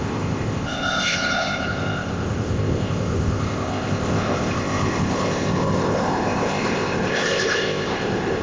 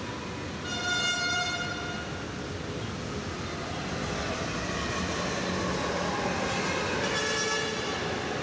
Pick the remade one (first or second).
first